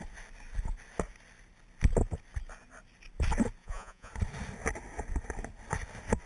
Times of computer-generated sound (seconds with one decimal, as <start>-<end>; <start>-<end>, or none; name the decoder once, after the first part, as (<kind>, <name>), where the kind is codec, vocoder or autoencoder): 3.6-4.1 (vocoder, Vocos)